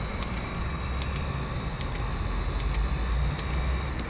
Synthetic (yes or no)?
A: no